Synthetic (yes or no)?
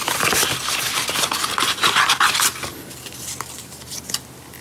no